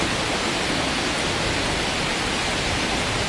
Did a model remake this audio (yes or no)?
no